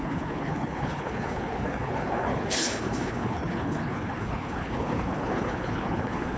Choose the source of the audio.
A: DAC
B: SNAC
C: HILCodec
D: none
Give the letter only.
C